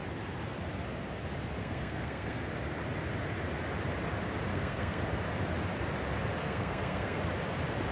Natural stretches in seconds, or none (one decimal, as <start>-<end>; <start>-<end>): 0.0-1.6; 2.4-4.5; 5.0-6.4; 7.2-7.9